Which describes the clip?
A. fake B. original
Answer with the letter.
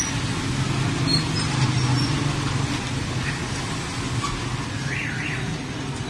B